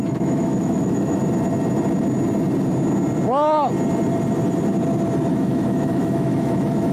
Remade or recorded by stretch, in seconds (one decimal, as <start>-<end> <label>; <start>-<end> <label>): 0.0-1.2 remade; 1.2-5.3 recorded; 5.3-6.9 remade